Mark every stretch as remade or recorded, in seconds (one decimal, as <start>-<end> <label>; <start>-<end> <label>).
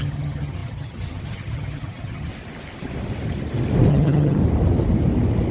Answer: 0.0-2.3 remade; 2.3-3.9 recorded; 3.9-4.4 remade; 4.4-5.5 recorded